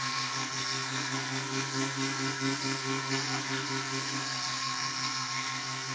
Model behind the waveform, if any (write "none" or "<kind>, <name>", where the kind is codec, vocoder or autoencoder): codec, SNAC